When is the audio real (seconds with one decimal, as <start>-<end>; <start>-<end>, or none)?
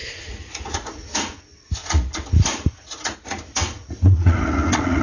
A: 1.4-1.8